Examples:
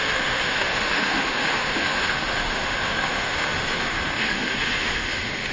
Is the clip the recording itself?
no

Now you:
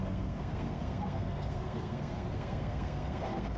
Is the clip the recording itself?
no